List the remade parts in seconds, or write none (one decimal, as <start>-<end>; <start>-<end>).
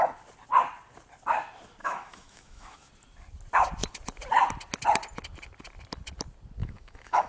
1.8-2.9; 6.6-7.3